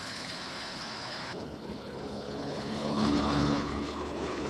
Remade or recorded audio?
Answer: remade